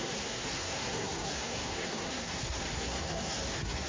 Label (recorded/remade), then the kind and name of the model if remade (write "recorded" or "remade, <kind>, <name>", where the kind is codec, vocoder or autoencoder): remade, codec, SNAC